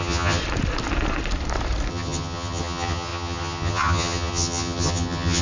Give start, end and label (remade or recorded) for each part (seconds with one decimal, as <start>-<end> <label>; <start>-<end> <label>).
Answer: 0.0-0.4 remade; 0.4-1.9 recorded; 1.9-5.4 remade